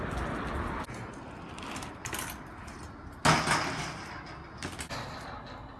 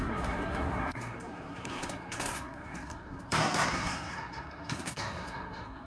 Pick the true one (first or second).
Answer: first